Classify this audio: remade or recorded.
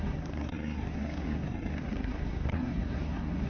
remade